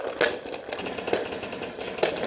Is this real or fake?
real